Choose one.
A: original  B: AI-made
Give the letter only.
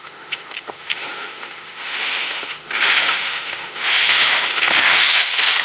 B